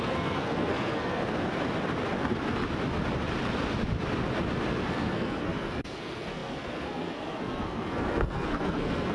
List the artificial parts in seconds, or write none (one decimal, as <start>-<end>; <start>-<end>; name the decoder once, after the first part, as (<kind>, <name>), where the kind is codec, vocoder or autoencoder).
0.0-1.2 (codec, SNAC); 4.9-9.1

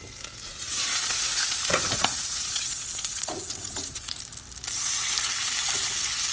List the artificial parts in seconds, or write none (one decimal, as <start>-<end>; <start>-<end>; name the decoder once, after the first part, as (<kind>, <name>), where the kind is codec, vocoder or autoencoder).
0.4-4.2 (vocoder, Vocos)

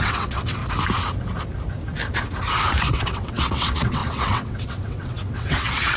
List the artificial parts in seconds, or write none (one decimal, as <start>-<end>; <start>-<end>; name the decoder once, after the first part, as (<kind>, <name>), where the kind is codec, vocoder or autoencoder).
0.0-0.6 (vocoder, WaveNeXt); 2.8-6.0

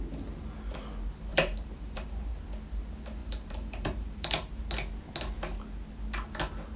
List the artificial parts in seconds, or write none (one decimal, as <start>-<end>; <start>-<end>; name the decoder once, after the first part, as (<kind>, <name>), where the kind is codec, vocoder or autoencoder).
1.3-2.3 (vocoder, BigVGAN v2); 3.2-4.6

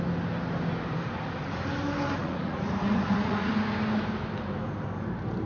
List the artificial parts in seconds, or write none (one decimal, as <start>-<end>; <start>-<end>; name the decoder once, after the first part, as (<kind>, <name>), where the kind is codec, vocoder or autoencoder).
2.2-3.5 (vocoder, Vocos)